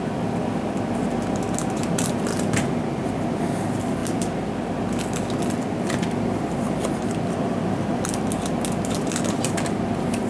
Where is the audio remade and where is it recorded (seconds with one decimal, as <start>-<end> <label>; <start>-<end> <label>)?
0.0-10.3 recorded